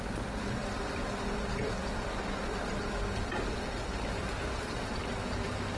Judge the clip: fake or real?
fake